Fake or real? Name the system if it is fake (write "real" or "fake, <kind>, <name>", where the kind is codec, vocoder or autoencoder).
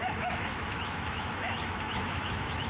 fake, autoencoder, DAC-VAE